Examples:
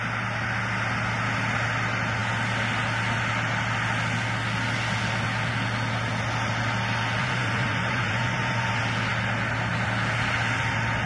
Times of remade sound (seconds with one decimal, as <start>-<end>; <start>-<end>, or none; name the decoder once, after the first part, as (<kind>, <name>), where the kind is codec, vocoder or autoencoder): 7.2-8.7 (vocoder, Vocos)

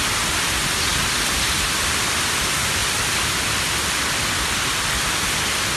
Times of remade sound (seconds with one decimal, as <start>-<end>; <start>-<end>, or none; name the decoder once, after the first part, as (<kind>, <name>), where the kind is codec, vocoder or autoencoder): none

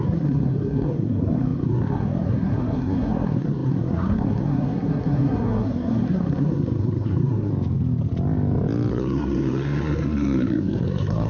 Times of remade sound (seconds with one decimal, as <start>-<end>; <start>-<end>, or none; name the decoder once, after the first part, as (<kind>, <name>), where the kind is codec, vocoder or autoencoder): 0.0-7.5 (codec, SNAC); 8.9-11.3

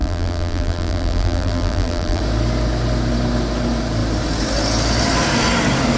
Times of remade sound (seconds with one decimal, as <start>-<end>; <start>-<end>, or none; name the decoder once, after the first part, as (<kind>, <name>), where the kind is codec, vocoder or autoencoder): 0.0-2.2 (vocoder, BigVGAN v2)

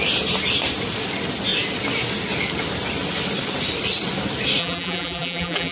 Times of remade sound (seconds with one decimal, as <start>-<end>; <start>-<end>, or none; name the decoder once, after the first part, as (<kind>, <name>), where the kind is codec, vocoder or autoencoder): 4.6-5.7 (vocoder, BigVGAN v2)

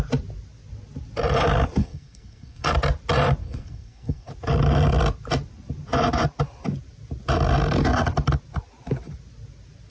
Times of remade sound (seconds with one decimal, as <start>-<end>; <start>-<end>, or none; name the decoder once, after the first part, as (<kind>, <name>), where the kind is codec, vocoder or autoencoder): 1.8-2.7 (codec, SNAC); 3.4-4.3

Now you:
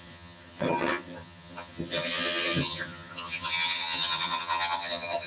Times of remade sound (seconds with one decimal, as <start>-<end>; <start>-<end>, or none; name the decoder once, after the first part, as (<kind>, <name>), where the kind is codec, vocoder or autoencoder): 0.0-5.3 (vocoder, HiFi-GAN)

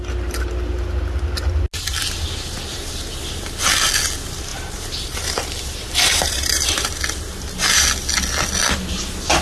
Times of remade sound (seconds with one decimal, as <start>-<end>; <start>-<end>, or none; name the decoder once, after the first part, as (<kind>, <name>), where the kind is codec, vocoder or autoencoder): 2.7-3.3 (vocoder, BigVGAN v2); 4.5-7.0